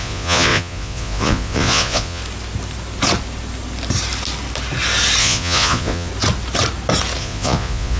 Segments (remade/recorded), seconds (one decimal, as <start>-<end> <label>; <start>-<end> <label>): 0.0-2.2 remade; 2.2-5.2 recorded; 5.2-6.1 remade; 6.1-7.2 recorded; 7.2-8.0 remade